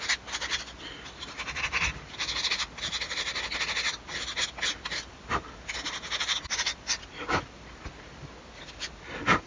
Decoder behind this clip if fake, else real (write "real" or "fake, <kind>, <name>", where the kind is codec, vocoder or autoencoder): real